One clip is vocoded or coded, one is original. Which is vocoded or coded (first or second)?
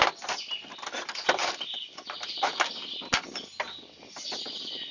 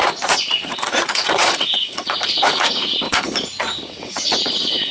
second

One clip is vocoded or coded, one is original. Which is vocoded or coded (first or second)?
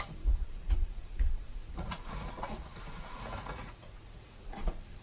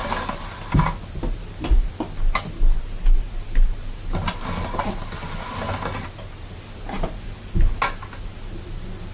first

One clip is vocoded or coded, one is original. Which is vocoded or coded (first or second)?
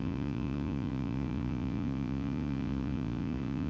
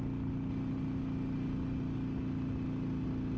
first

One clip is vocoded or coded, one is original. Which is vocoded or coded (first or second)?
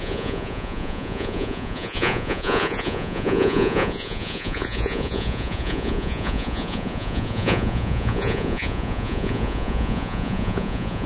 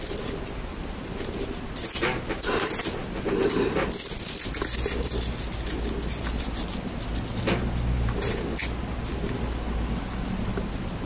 first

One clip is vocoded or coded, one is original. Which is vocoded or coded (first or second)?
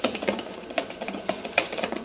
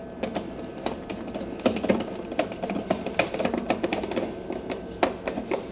first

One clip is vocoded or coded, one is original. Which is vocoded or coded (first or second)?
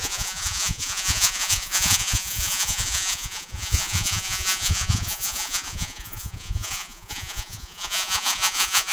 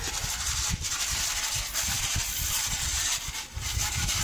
first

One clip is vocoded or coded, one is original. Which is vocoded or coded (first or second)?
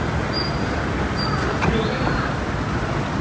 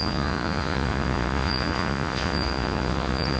second